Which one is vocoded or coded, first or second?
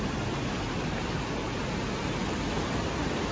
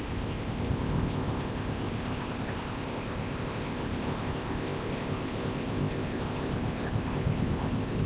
second